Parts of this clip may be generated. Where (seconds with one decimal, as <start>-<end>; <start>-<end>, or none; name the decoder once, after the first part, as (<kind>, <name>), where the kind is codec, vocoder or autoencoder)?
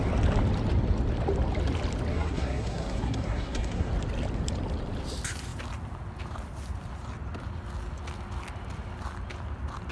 2.1-3.9 (codec, SNAC)